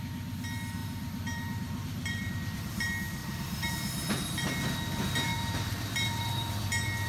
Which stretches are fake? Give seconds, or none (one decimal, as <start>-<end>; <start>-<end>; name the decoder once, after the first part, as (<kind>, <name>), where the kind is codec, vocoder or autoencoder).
0.8-2.3 (vocoder, BigVGAN v2); 3.2-3.7; 5.3-6.6